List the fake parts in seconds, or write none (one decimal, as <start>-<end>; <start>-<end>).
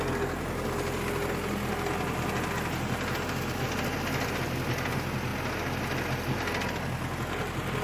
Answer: none